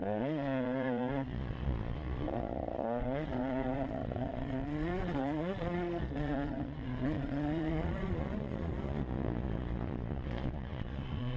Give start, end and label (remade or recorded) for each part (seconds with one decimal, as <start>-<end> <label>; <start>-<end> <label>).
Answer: 0.0-11.4 remade